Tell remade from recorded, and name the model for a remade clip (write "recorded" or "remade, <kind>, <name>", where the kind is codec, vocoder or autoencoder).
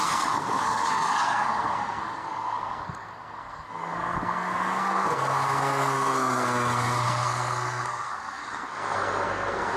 remade, codec, SNAC